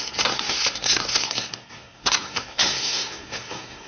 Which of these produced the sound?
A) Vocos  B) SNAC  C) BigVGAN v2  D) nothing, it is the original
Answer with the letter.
B